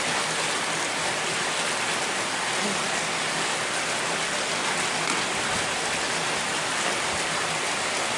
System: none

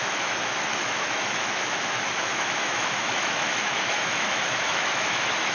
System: autoencoder, DAC-VAE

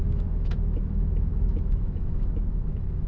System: autoencoder, DAC-VAE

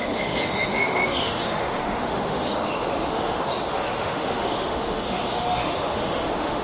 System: autoencoder, DAC-VAE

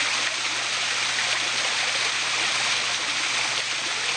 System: none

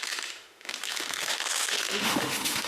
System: autoencoder, DAC-VAE